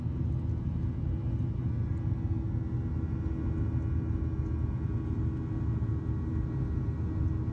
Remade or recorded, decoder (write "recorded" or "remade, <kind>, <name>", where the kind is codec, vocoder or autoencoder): recorded